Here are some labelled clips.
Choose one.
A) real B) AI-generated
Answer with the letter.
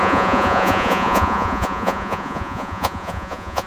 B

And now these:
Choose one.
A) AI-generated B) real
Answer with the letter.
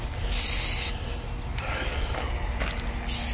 B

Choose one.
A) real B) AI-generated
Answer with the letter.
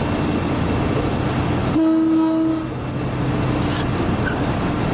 A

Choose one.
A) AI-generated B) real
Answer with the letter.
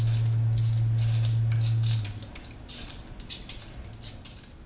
B